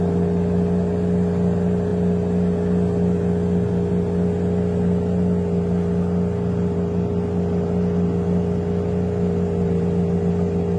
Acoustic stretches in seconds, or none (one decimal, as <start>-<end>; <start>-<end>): 0.0-10.8